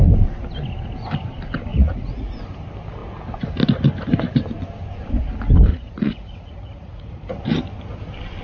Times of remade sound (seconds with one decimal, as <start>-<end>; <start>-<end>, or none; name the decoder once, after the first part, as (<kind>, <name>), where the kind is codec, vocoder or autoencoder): 1.7-2.4 (vocoder, Vocos); 5.7-7.3